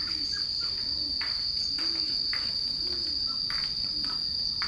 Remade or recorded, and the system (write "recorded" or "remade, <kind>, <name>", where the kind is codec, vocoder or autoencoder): recorded